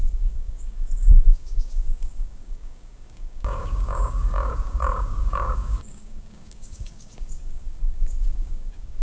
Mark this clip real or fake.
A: fake